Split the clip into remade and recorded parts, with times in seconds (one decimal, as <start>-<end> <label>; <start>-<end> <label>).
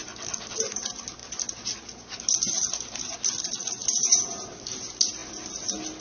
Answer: 0.0-6.0 recorded